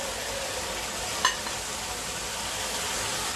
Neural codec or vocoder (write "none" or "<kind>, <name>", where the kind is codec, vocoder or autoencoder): none